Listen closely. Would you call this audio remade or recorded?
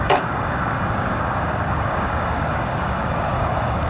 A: remade